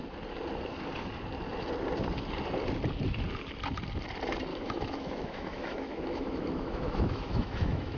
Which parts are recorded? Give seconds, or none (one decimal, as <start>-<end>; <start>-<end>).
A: 0.0-4.5